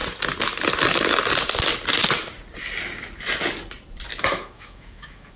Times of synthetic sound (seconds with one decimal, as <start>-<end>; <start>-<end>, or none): 4.1-5.4